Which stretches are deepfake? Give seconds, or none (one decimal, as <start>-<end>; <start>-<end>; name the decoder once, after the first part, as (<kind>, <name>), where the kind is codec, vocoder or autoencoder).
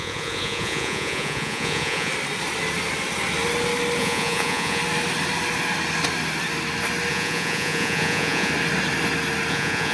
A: 0.0-2.1 (vocoder, Vocos); 4.0-4.8; 7.1-8.5; 9.5-9.9